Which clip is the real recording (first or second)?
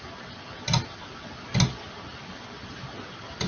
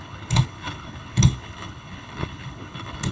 first